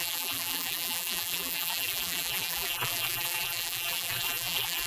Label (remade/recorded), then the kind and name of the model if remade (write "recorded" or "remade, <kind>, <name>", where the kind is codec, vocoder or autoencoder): remade, vocoder, BigVGAN v2